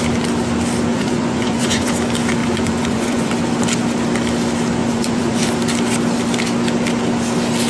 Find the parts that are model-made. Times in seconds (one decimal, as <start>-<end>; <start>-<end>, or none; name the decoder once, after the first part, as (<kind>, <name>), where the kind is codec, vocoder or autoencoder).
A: 0.9-1.9 (vocoder, Vocos); 2.4-3.3; 4.8-5.4